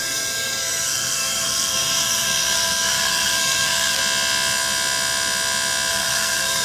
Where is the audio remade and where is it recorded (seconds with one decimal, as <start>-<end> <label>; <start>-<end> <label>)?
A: 0.0-4.0 remade; 4.0-5.9 recorded; 5.9-6.6 remade